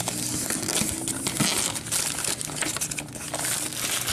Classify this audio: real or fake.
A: real